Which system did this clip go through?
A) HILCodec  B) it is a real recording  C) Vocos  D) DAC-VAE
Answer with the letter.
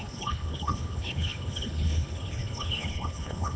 A